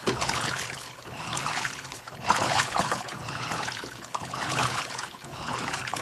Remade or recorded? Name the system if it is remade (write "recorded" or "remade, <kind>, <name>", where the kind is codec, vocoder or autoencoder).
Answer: remade, codec, HILCodec